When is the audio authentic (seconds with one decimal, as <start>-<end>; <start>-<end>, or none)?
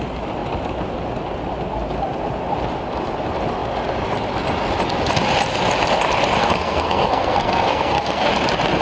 0.0-6.4; 8.3-8.8